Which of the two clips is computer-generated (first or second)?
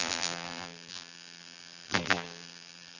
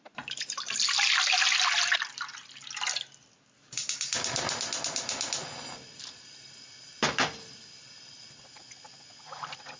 first